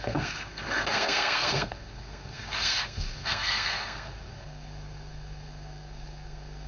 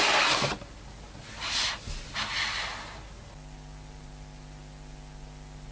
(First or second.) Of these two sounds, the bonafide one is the second